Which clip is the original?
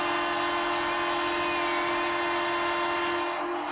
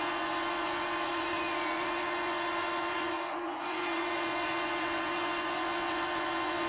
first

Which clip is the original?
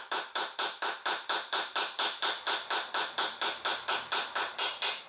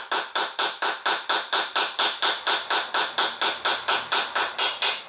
second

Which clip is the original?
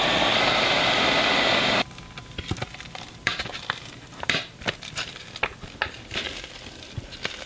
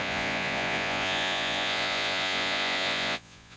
first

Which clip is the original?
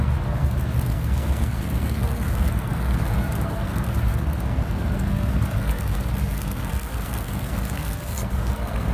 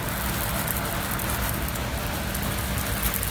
second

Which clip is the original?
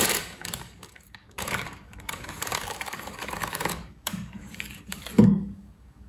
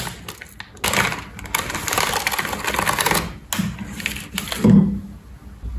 second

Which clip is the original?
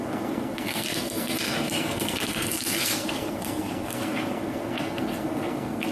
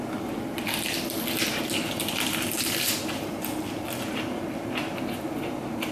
second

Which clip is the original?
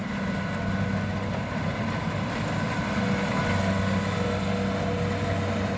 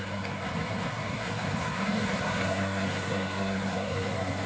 first